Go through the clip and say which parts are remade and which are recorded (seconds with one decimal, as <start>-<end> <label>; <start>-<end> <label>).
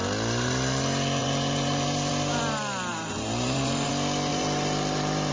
0.0-1.2 recorded; 1.2-2.4 remade; 2.4-2.9 recorded; 2.9-3.9 remade; 3.9-4.3 recorded; 4.3-5.3 remade